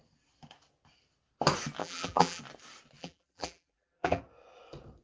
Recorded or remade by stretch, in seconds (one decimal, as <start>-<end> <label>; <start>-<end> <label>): 0.0-1.8 recorded; 1.8-2.4 remade; 2.4-3.0 recorded; 3.0-4.2 remade; 4.2-5.0 recorded